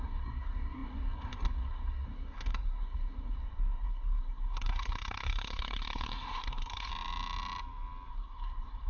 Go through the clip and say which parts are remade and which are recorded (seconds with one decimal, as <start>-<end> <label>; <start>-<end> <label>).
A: 0.0-6.9 remade; 6.9-8.1 recorded; 8.1-8.9 remade